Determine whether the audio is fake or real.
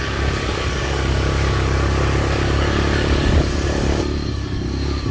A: fake